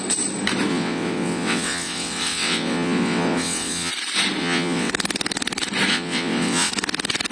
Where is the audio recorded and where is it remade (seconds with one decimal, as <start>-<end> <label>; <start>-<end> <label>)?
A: 0.0-0.7 recorded; 0.7-3.9 remade; 3.9-4.4 recorded; 4.4-4.9 remade; 4.9-5.9 recorded; 5.9-6.7 remade; 6.7-7.3 recorded

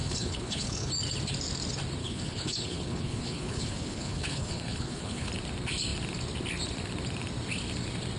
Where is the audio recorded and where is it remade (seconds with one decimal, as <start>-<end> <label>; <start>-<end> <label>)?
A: 0.0-0.9 remade; 0.9-2.0 recorded; 2.0-5.3 remade; 5.3-8.2 recorded

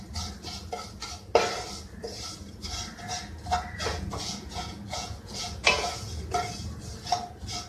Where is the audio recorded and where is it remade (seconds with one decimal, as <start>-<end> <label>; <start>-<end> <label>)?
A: 0.0-3.9 recorded; 3.9-6.2 remade; 6.2-7.7 recorded

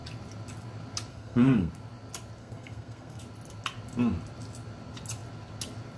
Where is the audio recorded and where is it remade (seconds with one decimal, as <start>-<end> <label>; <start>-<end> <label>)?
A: 0.0-1.1 recorded; 1.1-1.7 remade; 1.7-2.4 recorded; 2.4-3.2 remade; 3.2-6.0 recorded

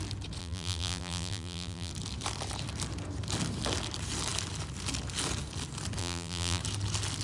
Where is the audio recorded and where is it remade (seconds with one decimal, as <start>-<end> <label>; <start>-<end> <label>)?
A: 0.0-0.4 recorded; 0.4-1.9 remade; 1.9-6.0 recorded; 6.0-6.6 remade; 6.6-7.2 recorded